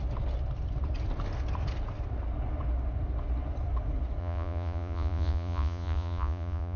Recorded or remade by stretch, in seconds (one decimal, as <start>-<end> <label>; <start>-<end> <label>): 0.0-4.2 recorded; 4.2-6.8 remade